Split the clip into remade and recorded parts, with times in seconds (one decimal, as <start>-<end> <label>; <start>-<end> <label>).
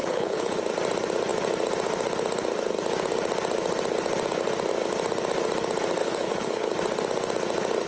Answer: 0.0-0.6 remade; 0.6-6.0 recorded; 6.0-6.7 remade; 6.7-7.9 recorded